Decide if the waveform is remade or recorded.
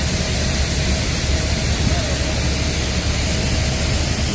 recorded